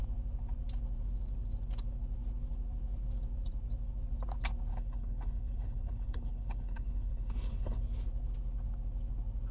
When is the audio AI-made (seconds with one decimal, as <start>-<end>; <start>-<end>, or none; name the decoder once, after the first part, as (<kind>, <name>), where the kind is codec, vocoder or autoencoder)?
4.7-7.8 (codec, HILCodec)